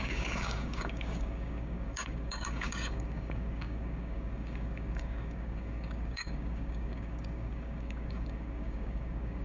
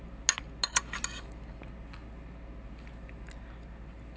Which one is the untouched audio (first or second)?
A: second